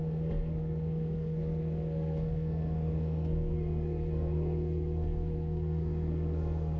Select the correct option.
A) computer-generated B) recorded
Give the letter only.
A